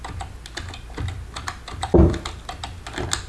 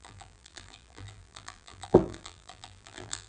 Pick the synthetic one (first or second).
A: second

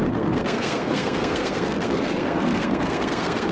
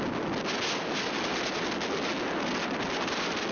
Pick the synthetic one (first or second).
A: first